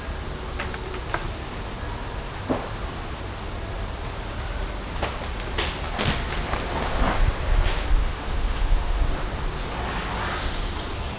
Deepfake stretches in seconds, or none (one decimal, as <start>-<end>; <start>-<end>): 8.0-9.0